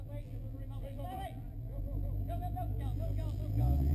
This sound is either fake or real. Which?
fake